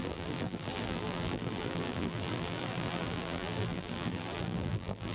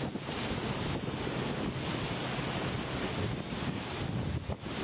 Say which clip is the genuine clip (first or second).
second